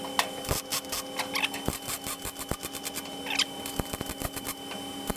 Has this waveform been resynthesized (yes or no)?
no